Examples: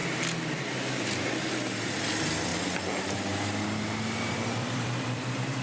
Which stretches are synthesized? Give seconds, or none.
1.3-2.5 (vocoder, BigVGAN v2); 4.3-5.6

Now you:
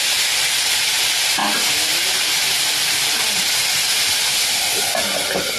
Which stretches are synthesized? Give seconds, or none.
none

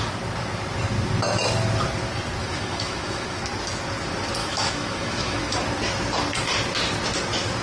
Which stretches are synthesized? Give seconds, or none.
2.4-3.4 (autoencoder, DAC-VAE); 4.4-5.6

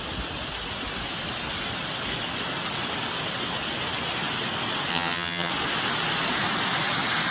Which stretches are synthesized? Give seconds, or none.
4.9-5.5 (vocoder, HiFi-GAN)

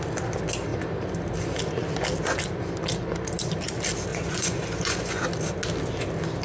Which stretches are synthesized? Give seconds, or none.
4.1-5.2 (vocoder, Vocos)

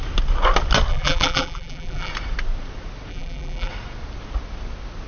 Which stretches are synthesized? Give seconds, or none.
0.9-2.1 (vocoder, BigVGAN v2); 3.1-3.7

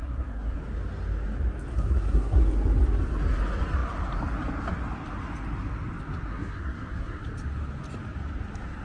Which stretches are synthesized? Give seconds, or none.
0.0-0.6 (codec, SNAC); 1.7-2.4; 6.3-7.2

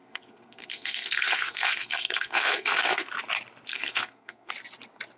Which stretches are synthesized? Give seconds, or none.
0.0-3.1 (codec, SNAC); 3.7-4.5